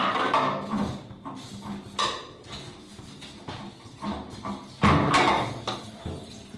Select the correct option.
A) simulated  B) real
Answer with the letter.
B